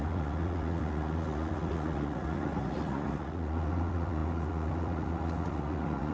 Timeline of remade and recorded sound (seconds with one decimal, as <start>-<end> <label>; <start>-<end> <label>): 0.0-6.1 remade